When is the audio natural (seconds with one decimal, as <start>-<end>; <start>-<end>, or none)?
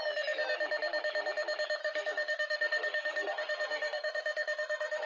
0.0-1.8